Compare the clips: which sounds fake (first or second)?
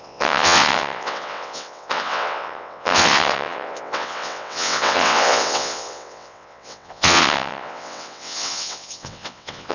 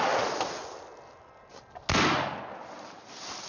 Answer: first